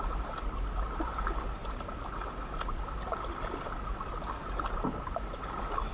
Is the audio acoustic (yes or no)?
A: yes